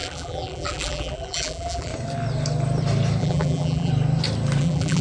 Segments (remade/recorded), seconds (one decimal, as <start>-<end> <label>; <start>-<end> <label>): 0.0-1.9 remade; 1.9-3.2 recorded; 3.2-3.9 remade; 3.9-4.6 recorded; 4.6-5.0 remade